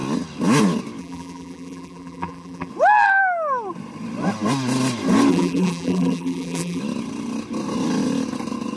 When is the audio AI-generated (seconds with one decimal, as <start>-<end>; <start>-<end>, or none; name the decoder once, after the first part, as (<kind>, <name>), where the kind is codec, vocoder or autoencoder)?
1.0-2.7 (vocoder, BigVGAN v2); 5.3-6.8